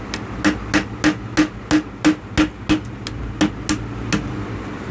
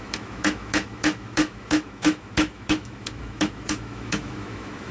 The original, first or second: first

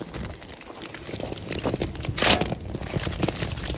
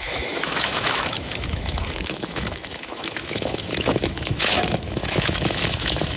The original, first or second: first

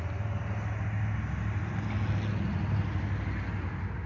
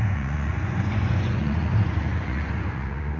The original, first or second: first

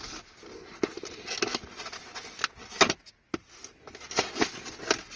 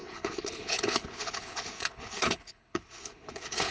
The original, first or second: first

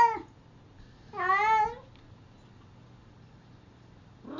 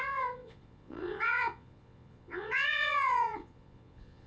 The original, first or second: first